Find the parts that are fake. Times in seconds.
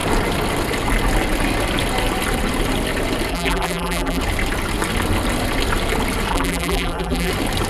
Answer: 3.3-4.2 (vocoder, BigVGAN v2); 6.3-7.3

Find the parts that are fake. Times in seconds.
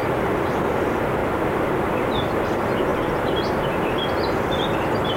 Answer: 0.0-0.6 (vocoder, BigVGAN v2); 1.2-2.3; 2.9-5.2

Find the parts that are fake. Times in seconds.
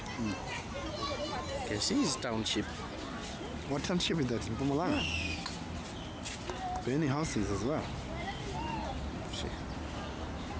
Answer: none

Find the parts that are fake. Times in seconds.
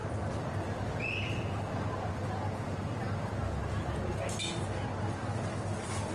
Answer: 0.0-2.3 (vocoder, BigVGAN v2)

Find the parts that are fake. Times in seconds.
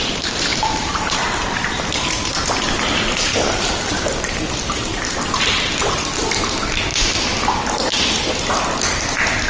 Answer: 0.5-1.2 (vocoder, BigVGAN v2); 3.3-5.4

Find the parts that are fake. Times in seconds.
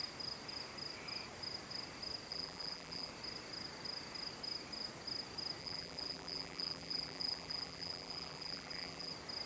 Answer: 2.3-3.1 (vocoder, BigVGAN v2); 5.6-9.1